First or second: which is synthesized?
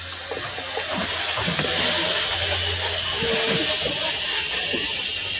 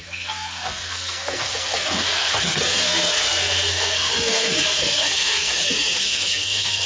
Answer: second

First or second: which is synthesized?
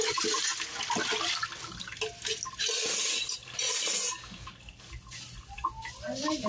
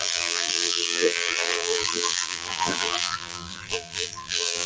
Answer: second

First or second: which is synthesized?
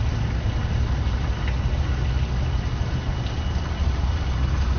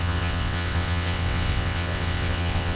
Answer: second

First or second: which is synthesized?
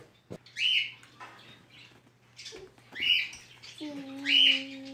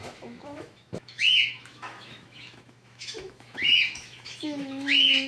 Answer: second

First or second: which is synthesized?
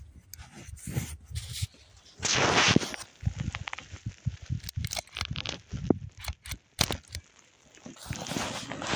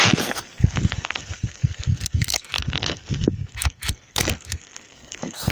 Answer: second